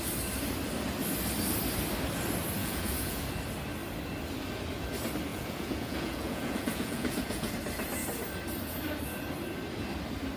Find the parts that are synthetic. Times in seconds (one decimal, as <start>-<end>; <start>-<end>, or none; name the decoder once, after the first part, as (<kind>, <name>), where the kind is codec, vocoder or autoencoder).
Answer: 2.6-3.2 (vocoder, Vocos); 5.3-7.5